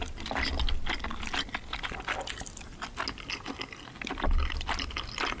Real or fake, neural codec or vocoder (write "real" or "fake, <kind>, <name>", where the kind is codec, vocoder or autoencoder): real